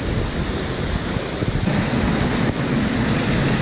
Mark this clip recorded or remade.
recorded